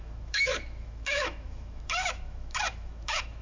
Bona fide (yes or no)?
no